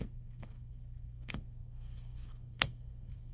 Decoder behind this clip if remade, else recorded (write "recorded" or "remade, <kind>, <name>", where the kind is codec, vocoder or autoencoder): remade, codec, SNAC